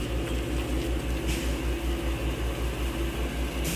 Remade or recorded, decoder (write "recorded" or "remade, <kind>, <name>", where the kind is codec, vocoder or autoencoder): recorded